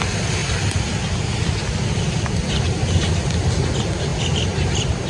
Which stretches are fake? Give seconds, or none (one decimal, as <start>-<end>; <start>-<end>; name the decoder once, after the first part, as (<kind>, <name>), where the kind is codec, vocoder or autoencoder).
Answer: 0.4-3.5 (vocoder, BigVGAN v2); 4.1-5.1